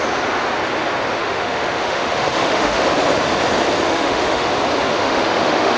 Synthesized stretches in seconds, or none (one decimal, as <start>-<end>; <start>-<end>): 1.2-2.8; 3.9-4.5; 4.9-5.8